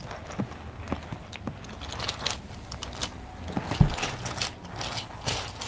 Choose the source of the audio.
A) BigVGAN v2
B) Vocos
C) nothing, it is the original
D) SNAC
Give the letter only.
C